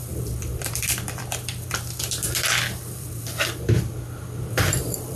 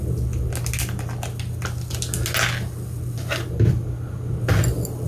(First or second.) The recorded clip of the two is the second